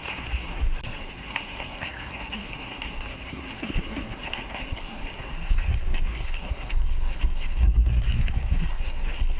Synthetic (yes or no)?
yes